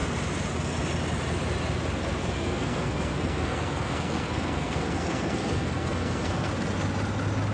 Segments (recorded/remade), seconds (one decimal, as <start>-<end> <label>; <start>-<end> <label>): 0.0-2.2 recorded; 2.2-6.5 remade; 6.5-7.5 recorded

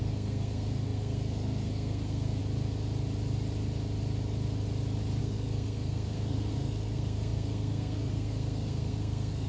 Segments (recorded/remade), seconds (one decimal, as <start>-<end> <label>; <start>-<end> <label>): 0.0-2.4 remade; 2.4-5.2 recorded; 5.2-9.5 remade

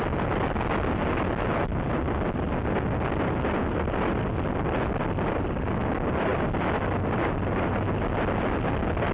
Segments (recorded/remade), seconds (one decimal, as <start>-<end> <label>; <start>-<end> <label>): 0.0-9.1 recorded

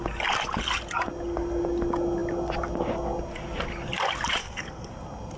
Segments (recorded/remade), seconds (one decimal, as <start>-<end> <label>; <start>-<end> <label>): 0.0-4.4 recorded; 4.4-4.9 remade; 4.9-5.4 recorded

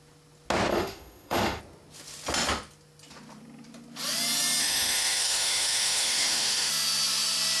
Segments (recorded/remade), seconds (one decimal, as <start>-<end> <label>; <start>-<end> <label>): 0.0-0.7 recorded; 0.7-1.6 remade; 1.6-4.6 recorded; 4.6-6.7 remade; 6.7-7.6 recorded